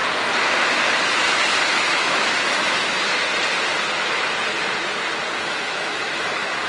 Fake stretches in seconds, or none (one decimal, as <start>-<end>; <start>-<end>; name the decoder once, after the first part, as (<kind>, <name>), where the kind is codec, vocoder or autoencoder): 1.7-3.3 (autoencoder, DAC-VAE); 5.4-6.7